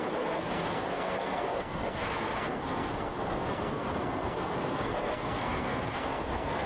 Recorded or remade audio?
remade